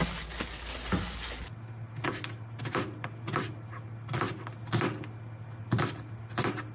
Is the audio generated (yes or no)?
no